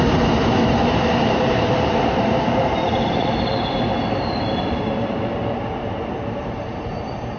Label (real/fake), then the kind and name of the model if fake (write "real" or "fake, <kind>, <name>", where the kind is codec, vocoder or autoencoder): fake, vocoder, BigVGAN v2